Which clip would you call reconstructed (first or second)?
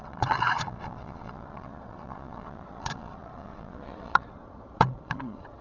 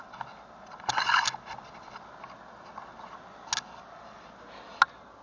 first